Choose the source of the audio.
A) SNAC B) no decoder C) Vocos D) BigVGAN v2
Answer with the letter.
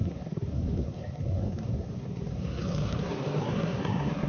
A